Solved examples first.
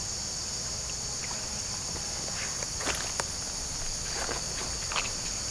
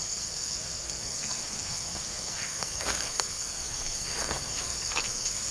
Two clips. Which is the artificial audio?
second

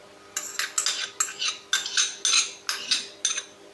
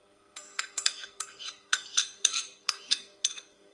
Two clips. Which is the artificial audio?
second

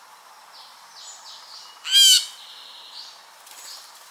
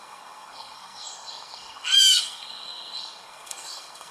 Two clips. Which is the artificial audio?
second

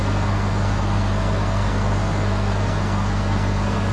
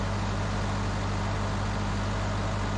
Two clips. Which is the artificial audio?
first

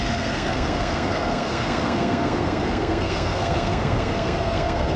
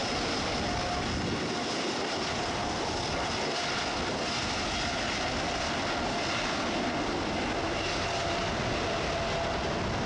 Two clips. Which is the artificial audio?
first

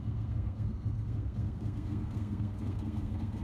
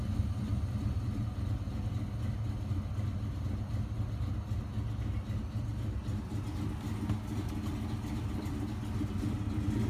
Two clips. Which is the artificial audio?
first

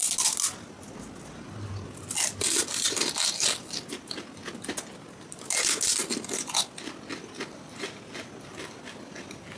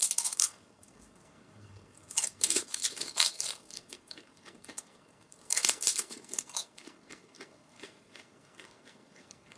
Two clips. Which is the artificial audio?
second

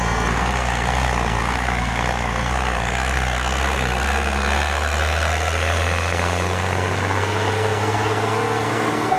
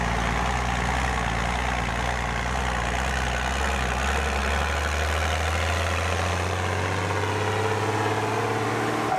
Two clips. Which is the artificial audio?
first